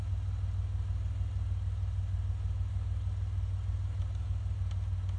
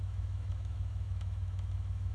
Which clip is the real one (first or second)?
first